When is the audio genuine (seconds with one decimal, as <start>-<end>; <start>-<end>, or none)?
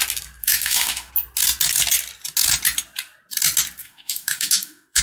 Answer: 0.0-0.4; 1.1-3.8